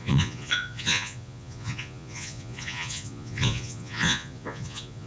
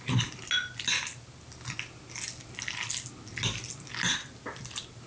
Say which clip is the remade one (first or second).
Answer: first